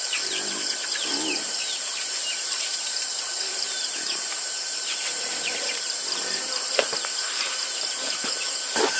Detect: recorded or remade remade